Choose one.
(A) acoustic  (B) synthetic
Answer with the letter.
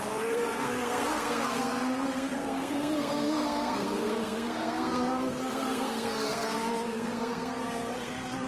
B